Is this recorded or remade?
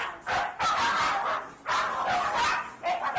recorded